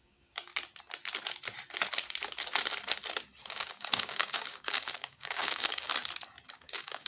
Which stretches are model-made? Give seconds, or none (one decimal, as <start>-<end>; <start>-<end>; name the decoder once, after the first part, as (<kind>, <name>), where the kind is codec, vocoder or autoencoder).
0.0-0.5 (codec, DAC); 3.5-5.9; 6.5-7.1